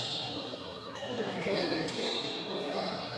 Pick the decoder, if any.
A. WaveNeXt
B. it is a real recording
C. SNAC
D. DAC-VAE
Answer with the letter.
C